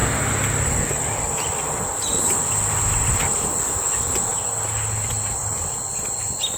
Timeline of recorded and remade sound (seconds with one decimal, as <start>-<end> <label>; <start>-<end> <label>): 0.0-6.6 recorded